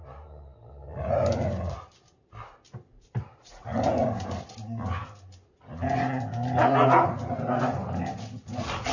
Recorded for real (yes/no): yes